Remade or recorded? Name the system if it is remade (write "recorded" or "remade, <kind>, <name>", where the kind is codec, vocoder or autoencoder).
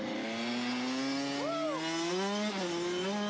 recorded